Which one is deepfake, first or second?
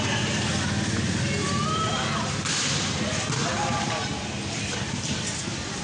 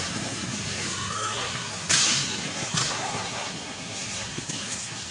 second